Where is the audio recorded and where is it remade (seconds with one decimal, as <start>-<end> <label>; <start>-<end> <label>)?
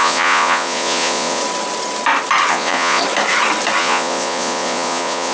0.0-1.4 remade; 1.4-2.5 recorded; 2.5-3.0 remade; 3.0-3.8 recorded; 3.8-5.3 remade